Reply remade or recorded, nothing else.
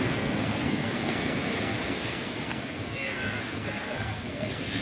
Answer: remade